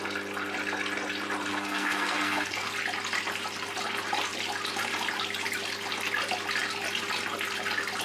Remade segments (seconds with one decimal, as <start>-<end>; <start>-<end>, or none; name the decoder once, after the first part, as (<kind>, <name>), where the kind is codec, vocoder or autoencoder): 1.5-2.7 (codec, SNAC)